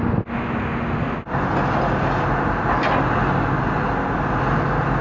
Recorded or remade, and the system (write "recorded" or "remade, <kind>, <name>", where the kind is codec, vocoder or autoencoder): recorded